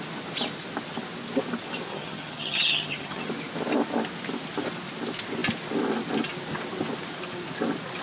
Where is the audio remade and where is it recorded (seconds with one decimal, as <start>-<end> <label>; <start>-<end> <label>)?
0.0-1.9 recorded; 1.9-3.3 remade; 3.3-8.0 recorded

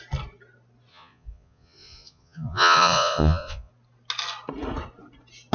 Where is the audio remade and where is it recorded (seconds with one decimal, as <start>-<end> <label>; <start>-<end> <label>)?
0.0-0.9 recorded; 0.9-3.7 remade; 3.7-5.5 recorded

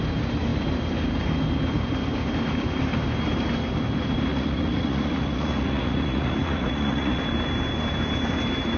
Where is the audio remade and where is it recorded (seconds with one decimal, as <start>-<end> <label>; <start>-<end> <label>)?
0.0-4.3 recorded; 4.3-7.2 remade; 7.2-8.8 recorded

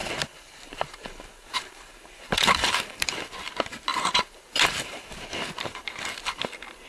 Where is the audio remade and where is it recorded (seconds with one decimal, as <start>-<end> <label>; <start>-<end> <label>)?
0.0-3.2 remade; 3.2-3.9 recorded; 3.9-5.2 remade; 5.2-6.9 recorded